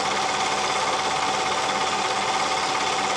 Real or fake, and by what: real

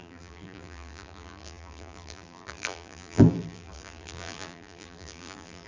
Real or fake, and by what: fake, vocoder, BigVGAN v2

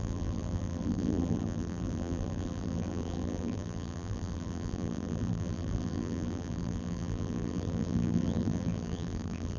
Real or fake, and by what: fake, vocoder, BigVGAN v2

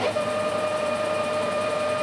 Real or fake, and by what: fake, vocoder, BigVGAN v2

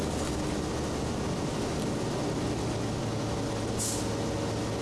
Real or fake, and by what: real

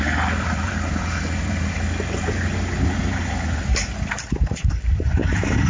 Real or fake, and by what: fake, vocoder, BigVGAN v2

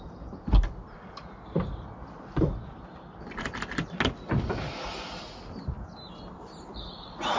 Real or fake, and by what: real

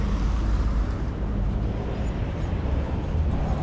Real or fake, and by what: fake, vocoder, BigVGAN v2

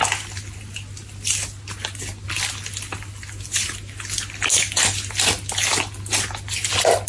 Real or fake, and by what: real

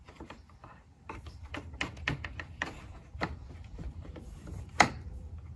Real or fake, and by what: fake, vocoder, BigVGAN v2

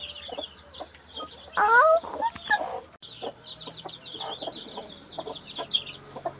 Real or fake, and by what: real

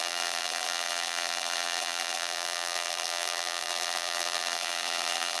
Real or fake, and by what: fake, vocoder, BigVGAN v2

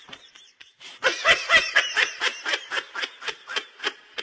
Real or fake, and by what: fake, vocoder, BigVGAN v2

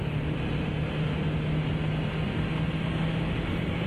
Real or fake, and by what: real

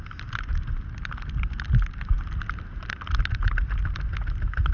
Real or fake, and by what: real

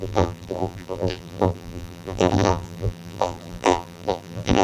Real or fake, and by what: fake, vocoder, BigVGAN v2